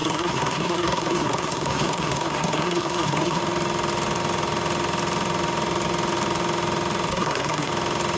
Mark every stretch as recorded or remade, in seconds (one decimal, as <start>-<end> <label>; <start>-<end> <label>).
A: 0.0-3.4 remade; 3.4-7.1 recorded; 7.1-7.7 remade; 7.7-8.2 recorded